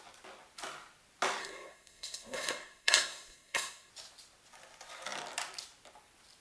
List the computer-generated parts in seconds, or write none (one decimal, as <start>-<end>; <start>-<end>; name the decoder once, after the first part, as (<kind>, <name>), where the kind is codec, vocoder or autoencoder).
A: 1.4-3.9 (codec, SNAC)